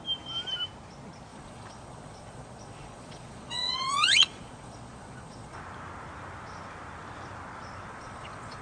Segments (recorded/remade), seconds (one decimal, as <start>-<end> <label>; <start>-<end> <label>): 0.0-1.3 recorded; 1.3-5.6 remade; 5.6-7.9 recorded; 7.9-8.6 remade